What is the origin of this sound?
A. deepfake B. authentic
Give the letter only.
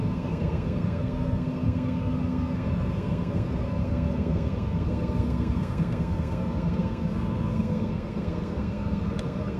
A